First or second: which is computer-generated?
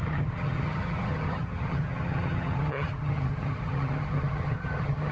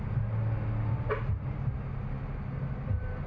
first